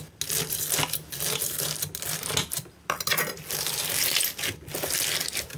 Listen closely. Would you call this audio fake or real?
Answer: real